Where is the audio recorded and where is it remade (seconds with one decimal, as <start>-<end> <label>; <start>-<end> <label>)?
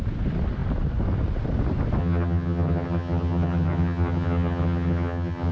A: 0.0-2.0 recorded; 2.0-5.5 remade